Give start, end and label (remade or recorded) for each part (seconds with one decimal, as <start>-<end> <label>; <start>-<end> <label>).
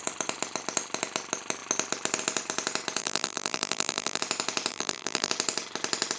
0.0-3.0 recorded; 3.0-4.2 remade; 4.2-4.7 recorded; 4.7-5.3 remade; 5.3-6.2 recorded